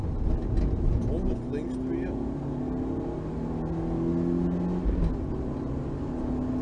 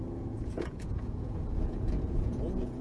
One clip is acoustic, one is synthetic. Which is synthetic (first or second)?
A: second